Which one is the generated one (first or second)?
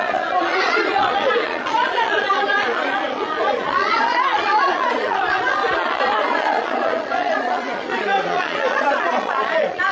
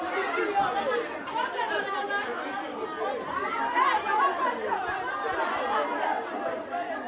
first